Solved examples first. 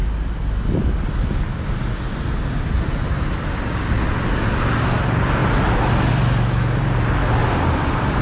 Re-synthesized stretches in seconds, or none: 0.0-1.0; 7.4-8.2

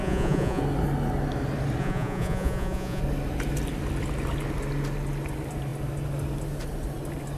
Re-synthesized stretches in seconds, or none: 0.0-0.6; 1.8-3.0

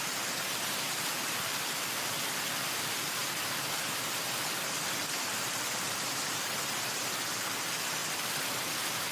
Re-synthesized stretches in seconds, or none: 0.0-3.2; 5.0-8.0

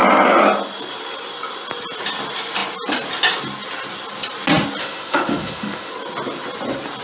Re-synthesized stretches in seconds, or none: 4.8-5.9

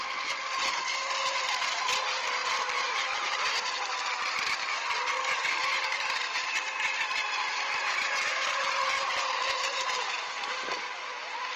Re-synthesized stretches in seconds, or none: 2.4-5.0; 7.2-10.5